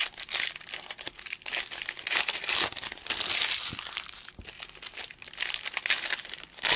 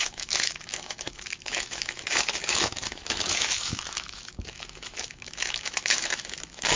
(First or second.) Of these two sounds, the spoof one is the second